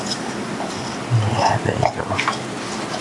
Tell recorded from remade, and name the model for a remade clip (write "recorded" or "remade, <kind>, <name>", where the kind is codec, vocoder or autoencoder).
recorded